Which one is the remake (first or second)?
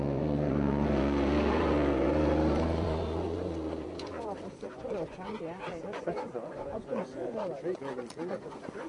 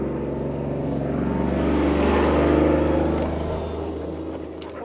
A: first